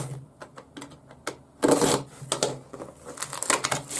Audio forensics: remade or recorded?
recorded